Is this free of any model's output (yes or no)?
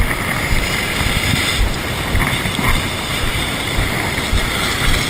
yes